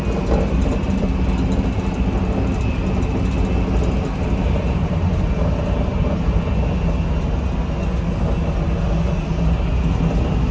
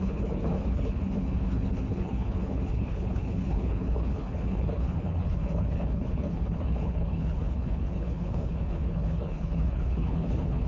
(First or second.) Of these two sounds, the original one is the first